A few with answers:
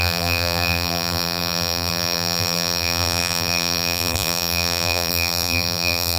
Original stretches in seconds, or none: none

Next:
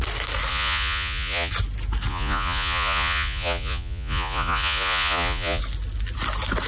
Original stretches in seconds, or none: 0.0-0.5; 1.5-2.1; 5.6-6.7

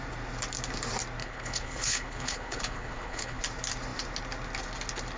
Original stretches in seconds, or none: 0.0-1.2; 3.4-5.2

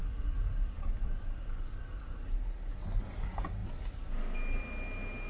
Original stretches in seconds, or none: 0.0-5.3

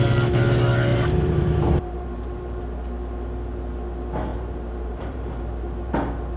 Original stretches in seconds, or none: 0.0-0.9; 2.6-4.3; 5.9-6.4